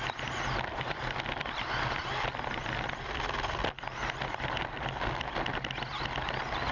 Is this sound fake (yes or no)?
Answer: no